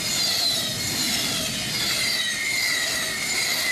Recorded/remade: recorded